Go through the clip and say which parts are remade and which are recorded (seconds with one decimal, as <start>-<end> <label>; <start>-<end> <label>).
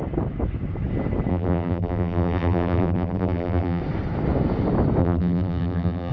0.0-1.3 recorded; 1.3-3.8 remade; 3.8-5.0 recorded; 5.0-6.1 remade